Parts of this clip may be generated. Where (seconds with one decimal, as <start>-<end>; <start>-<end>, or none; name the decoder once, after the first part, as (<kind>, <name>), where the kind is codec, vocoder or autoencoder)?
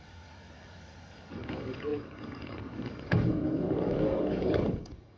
0.0-5.2 (codec, DAC)